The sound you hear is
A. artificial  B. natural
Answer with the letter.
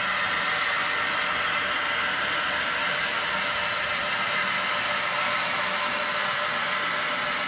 B